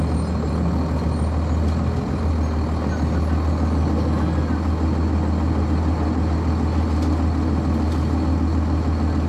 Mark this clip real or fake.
real